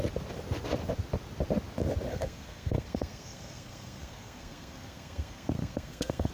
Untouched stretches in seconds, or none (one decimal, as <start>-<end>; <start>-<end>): 0.0-2.1